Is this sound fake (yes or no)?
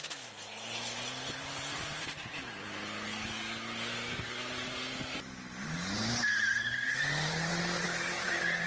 yes